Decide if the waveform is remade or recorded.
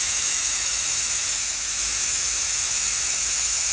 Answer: remade